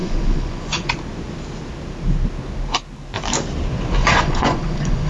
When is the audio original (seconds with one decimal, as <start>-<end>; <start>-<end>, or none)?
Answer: 0.9-4.0